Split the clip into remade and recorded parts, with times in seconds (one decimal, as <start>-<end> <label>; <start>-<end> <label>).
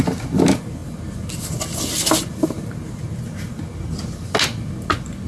0.0-5.3 recorded